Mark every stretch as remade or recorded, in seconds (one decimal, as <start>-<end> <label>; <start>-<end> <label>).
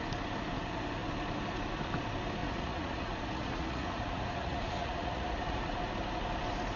0.0-2.4 recorded; 2.4-5.8 remade; 5.8-6.8 recorded